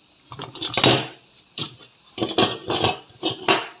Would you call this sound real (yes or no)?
yes